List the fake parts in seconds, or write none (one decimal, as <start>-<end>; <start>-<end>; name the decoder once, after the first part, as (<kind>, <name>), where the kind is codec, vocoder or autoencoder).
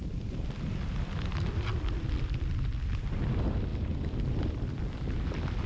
0.0-2.5 (vocoder, BigVGAN v2); 3.7-4.4